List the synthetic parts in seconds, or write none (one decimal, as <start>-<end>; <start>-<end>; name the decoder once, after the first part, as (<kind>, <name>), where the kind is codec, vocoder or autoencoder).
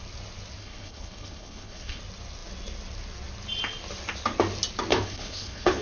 0.6-2.0 (codec, HILCodec); 4.9-5.8